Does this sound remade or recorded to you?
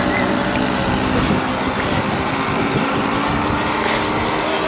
recorded